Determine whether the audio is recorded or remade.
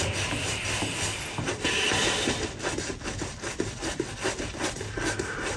recorded